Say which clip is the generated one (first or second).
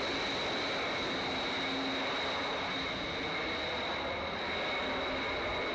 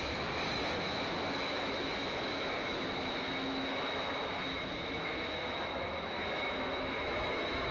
second